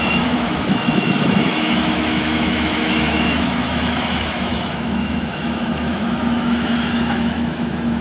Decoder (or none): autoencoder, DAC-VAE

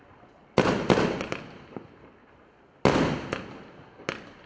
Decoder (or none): none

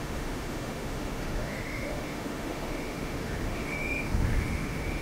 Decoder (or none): autoencoder, DAC-VAE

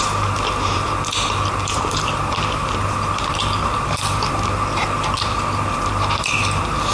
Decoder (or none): vocoder, BigVGAN v2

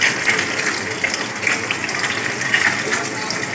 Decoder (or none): none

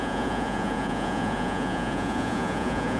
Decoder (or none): vocoder, Vocos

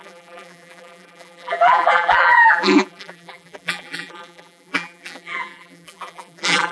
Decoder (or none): vocoder, BigVGAN v2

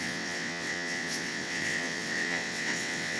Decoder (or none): vocoder, WaveNeXt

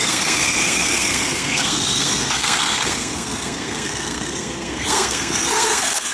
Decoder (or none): codec, SNAC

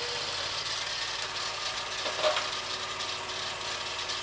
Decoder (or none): none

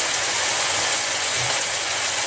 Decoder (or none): vocoder, Vocos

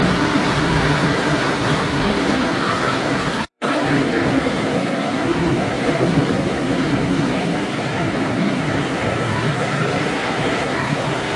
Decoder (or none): codec, SNAC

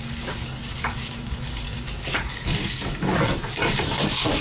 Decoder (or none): codec, DAC